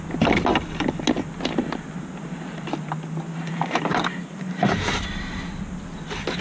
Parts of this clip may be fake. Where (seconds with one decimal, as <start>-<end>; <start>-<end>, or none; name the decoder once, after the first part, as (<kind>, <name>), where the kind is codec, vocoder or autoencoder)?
3.5-5.4 (vocoder, BigVGAN v2)